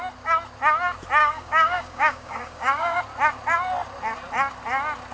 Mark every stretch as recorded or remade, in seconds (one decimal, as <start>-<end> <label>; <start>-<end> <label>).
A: 0.0-1.2 recorded; 1.2-3.0 remade; 3.0-5.1 recorded